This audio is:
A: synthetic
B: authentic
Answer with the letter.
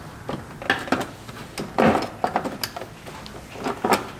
B